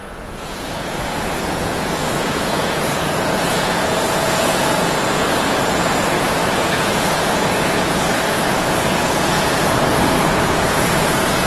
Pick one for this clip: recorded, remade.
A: remade